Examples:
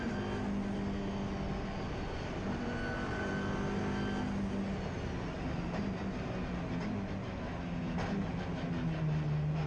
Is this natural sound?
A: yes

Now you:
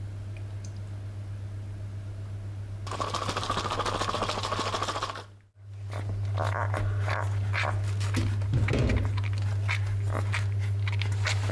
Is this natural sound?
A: yes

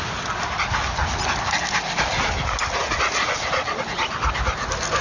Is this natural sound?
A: yes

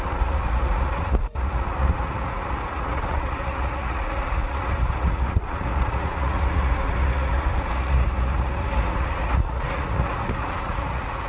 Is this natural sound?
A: no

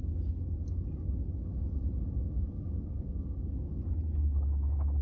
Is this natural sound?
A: yes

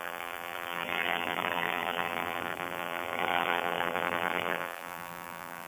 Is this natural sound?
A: no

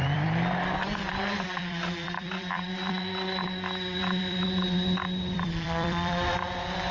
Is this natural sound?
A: no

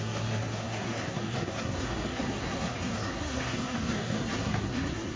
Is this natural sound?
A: no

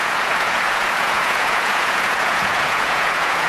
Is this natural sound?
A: no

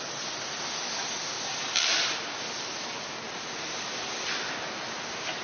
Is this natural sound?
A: yes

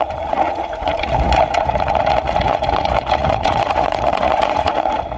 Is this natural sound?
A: no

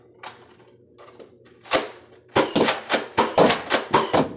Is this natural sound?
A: yes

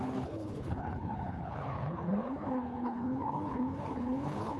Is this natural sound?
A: no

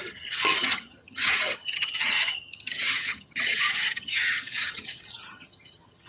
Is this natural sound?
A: no